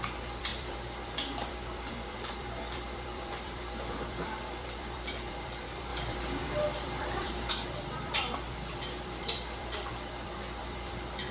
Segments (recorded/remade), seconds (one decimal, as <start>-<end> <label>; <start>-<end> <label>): 0.0-11.3 remade